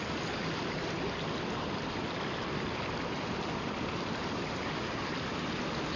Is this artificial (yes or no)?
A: no